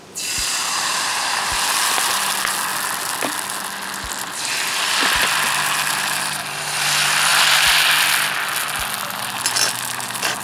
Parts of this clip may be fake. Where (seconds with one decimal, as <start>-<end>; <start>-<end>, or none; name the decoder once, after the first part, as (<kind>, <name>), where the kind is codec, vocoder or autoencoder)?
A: 7.3-8.6 (vocoder, BigVGAN v2)